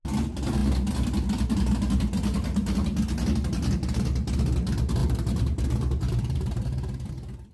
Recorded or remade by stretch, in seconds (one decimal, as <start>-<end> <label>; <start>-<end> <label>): 0.0-5.0 recorded; 5.0-7.1 remade; 7.1-7.5 recorded